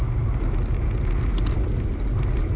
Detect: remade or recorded recorded